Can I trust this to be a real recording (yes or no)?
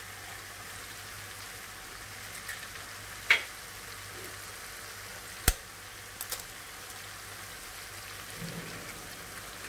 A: yes